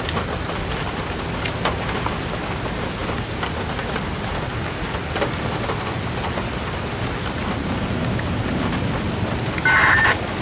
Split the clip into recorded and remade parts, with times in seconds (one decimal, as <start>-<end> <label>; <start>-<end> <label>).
0.0-10.4 recorded